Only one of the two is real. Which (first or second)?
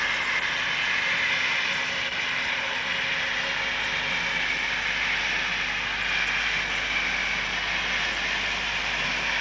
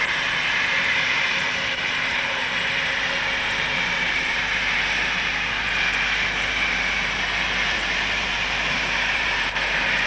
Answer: first